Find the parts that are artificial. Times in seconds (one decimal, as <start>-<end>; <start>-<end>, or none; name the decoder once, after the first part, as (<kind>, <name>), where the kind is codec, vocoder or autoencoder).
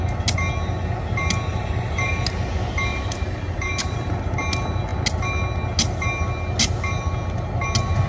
1.5-2.1 (vocoder, BigVGAN v2); 2.9-4.1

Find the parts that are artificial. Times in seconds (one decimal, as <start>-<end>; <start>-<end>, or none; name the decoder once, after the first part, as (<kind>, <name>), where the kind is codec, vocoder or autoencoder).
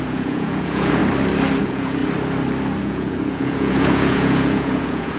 0.0-1.0 (vocoder, Vocos); 1.6-2.0; 2.8-5.2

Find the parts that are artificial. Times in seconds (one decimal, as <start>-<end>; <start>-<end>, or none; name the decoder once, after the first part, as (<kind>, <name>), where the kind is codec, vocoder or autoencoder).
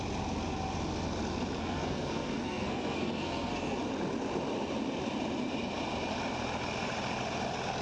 1.6-3.8 (codec, SNAC)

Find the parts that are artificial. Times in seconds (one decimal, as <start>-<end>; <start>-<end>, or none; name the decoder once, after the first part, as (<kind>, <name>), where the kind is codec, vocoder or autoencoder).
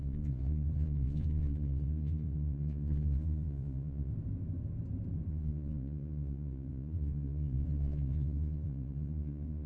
0.0-4.1 (vocoder, Vocos); 5.3-9.7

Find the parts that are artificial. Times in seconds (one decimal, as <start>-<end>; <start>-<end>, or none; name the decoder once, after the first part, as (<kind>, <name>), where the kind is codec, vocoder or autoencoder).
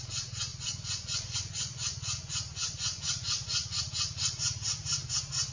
0.5-3.8 (vocoder, Vocos)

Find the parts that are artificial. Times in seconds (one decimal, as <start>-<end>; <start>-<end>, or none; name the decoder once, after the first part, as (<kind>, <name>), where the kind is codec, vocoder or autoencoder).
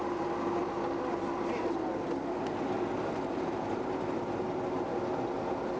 none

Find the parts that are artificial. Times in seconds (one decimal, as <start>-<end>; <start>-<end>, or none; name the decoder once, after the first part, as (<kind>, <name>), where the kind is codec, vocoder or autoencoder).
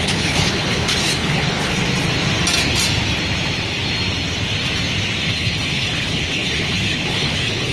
0.0-1.7 (codec, HILCodec); 5.2-7.7